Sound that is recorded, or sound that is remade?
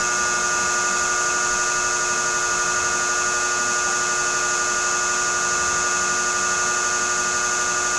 recorded